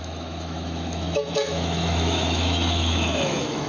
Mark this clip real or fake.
fake